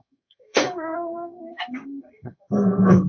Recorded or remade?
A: remade